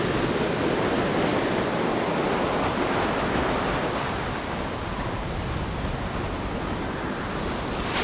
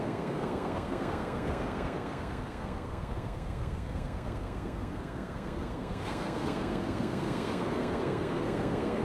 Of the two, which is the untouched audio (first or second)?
first